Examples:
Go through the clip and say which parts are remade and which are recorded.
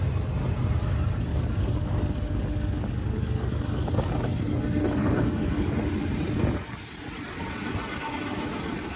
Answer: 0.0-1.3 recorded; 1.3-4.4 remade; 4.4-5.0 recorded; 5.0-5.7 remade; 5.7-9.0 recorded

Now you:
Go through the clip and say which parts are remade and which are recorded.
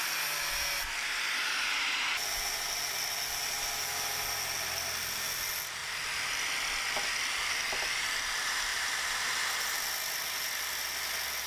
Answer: 0.0-11.5 recorded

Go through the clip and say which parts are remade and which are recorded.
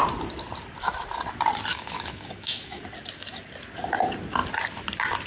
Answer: 0.0-1.7 recorded; 1.7-2.8 remade; 2.8-5.3 recorded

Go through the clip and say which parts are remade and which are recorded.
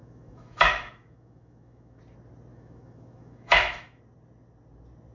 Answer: 0.0-2.0 remade; 2.0-2.5 recorded; 2.5-4.0 remade; 4.0-5.1 recorded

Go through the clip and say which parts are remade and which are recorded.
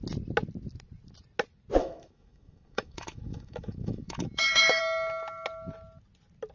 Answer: 0.0-1.8 recorded; 1.8-4.8 remade; 4.8-6.5 recorded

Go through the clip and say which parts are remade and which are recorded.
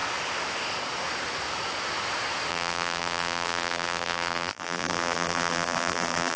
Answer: 0.0-2.5 recorded; 2.5-6.4 remade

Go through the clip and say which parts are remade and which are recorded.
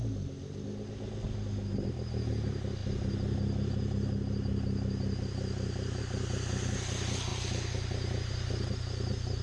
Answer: 0.0-9.4 recorded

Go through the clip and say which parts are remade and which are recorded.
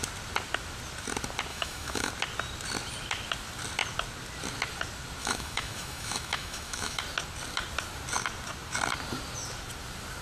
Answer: 0.0-1.5 recorded; 1.5-2.1 remade; 2.1-5.2 recorded; 5.2-7.0 remade; 7.0-10.2 recorded